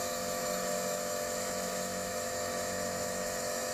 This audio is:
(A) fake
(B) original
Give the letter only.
A